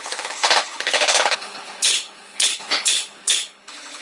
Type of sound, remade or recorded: remade